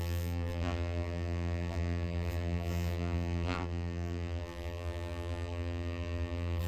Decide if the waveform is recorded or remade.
remade